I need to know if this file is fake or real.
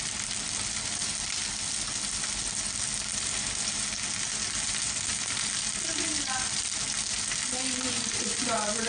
real